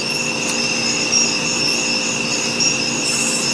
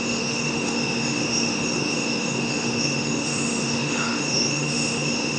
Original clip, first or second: first